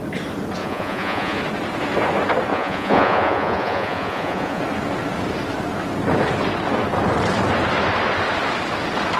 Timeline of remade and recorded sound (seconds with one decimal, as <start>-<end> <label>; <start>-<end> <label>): 0.0-0.6 recorded; 0.6-1.4 remade; 1.4-2.5 recorded; 2.5-4.6 remade; 4.6-9.2 recorded